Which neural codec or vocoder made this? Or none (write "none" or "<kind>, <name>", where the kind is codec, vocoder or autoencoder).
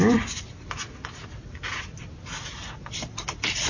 none